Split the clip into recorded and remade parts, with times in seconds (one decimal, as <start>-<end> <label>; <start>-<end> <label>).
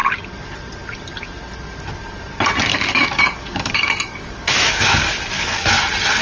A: 0.0-2.7 recorded; 2.7-5.7 remade; 5.7-6.2 recorded